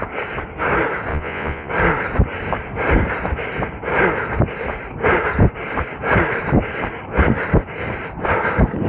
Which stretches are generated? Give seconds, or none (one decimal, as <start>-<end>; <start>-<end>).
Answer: 1.1-1.7